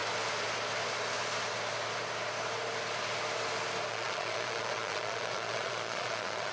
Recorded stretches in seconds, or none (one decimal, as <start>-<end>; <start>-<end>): 0.0-3.9